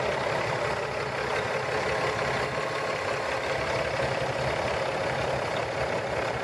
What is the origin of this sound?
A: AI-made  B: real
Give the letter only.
B